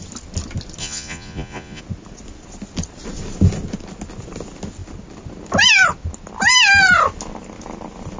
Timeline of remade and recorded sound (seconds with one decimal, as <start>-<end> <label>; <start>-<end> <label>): 0.0-0.8 recorded; 0.8-1.8 remade; 1.8-8.2 recorded